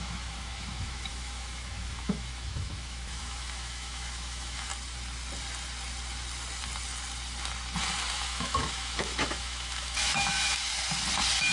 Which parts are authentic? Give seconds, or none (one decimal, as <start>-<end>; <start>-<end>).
4.7-8.1; 10.7-11.5